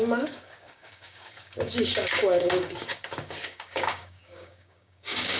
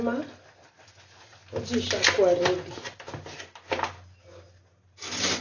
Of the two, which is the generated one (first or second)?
first